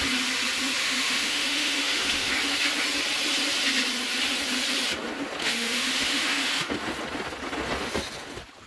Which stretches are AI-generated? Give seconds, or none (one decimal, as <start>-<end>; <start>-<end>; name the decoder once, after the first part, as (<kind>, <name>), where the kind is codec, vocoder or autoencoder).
0.8-2.3 (autoencoder, DAC-VAE); 5.4-6.7